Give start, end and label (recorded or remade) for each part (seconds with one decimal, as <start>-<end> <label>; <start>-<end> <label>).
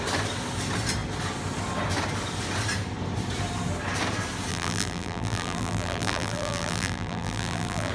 0.0-4.5 recorded; 4.5-7.9 remade